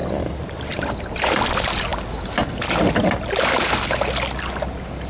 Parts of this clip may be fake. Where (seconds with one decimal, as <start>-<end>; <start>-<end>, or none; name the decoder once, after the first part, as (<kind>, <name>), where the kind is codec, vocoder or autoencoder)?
0.0-0.9 (vocoder, BigVGAN v2)